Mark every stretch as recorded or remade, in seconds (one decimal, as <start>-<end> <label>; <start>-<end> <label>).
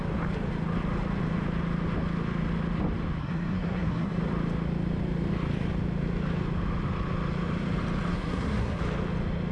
0.0-3.2 recorded; 3.2-4.2 remade; 4.2-8.1 recorded; 8.1-8.8 remade; 8.8-9.5 recorded